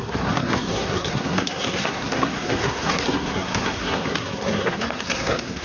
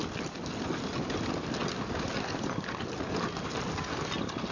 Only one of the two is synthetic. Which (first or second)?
first